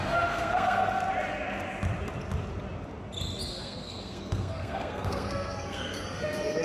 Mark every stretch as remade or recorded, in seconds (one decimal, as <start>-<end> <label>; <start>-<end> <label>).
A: 0.0-0.8 remade; 0.8-3.5 recorded; 3.5-6.6 remade